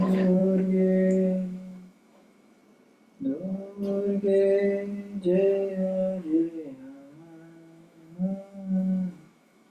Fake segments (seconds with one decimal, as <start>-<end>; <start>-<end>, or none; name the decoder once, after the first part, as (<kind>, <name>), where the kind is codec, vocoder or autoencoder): 0.0-2.6 (autoencoder, DAC-VAE); 5.7-9.7